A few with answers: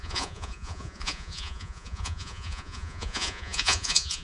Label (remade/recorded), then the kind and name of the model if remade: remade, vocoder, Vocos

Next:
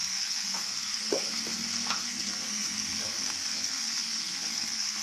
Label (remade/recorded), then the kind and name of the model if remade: remade, codec, SNAC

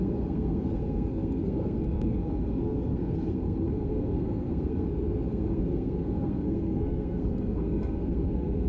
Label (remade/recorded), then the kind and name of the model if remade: remade, codec, SNAC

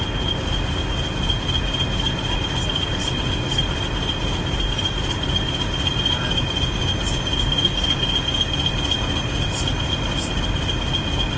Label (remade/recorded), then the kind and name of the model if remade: recorded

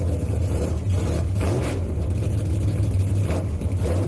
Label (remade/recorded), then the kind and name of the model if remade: remade, vocoder, BigVGAN v2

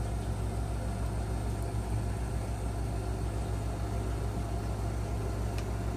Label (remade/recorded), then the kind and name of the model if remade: recorded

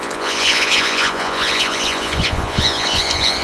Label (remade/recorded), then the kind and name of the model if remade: remade, vocoder, Vocos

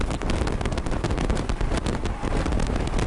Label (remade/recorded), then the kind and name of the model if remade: recorded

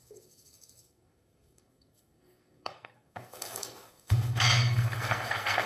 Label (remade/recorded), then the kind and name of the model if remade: remade, codec, SNAC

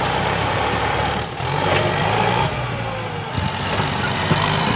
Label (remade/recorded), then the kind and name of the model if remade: recorded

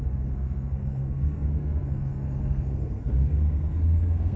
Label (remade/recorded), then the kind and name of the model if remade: remade, codec, SNAC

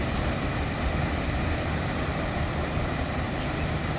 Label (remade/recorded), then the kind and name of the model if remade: remade, vocoder, BigVGAN v2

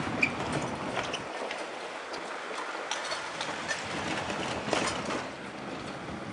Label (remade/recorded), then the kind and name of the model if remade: recorded